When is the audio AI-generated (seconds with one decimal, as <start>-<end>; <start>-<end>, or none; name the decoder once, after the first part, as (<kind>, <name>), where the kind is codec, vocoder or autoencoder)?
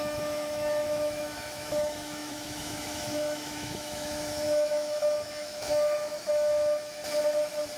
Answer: 0.0-7.0 (autoencoder, DAC-VAE)